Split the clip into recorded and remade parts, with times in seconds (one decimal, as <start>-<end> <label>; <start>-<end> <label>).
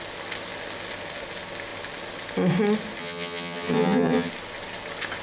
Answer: 0.0-3.0 recorded; 3.0-4.3 remade; 4.3-5.2 recorded